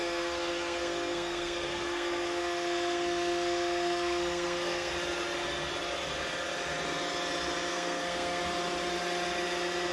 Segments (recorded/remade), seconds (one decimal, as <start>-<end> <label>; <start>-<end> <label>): 0.0-4.9 remade; 4.9-7.7 recorded; 7.7-8.4 remade; 8.4-9.9 recorded